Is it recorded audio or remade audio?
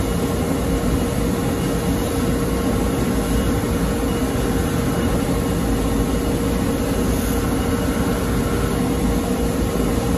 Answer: recorded